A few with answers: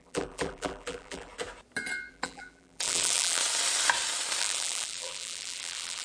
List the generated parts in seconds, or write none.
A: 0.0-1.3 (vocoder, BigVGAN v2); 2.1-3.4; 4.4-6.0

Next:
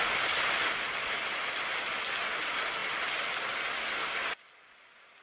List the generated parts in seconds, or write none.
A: none

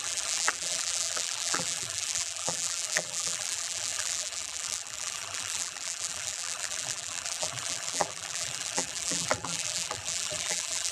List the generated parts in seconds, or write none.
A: 0.0-10.9 (vocoder, BigVGAN v2)